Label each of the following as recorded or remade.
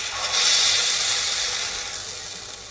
recorded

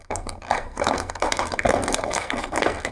remade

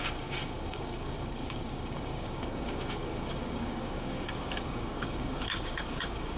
remade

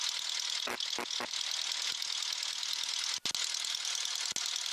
recorded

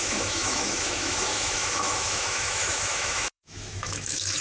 remade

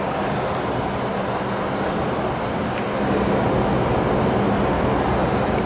recorded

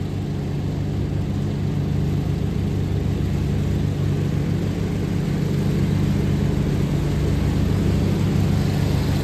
recorded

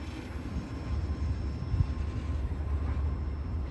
recorded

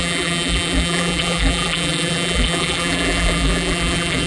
remade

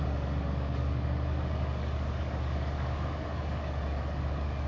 remade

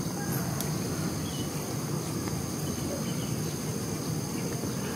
recorded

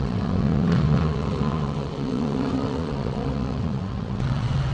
remade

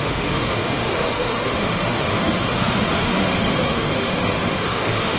remade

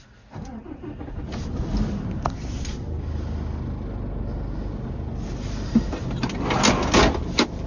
recorded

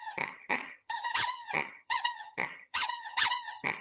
remade